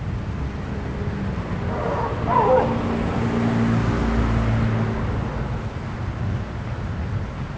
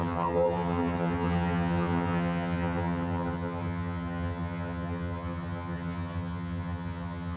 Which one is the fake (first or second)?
second